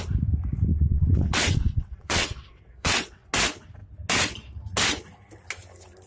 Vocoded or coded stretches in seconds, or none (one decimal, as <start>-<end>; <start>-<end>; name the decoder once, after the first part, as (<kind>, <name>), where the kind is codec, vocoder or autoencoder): 0.7-3.3 (vocoder, WaveNeXt)